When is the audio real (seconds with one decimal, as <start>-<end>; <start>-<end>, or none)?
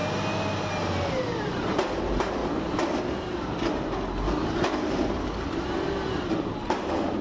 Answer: 0.0-1.5; 2.4-6.7